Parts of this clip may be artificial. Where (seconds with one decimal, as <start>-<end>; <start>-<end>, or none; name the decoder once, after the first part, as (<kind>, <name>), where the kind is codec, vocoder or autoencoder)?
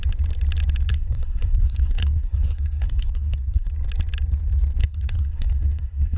0.9-3.7 (codec, SNAC); 4.8-6.2